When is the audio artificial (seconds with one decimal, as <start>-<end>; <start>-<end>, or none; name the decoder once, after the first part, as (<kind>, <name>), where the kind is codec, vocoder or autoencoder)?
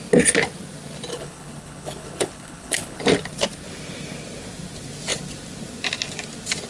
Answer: 1.1-3.0 (codec, HILCodec)